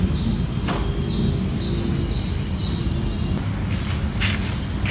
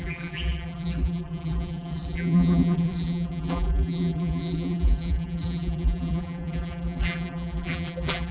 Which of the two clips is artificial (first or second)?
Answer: second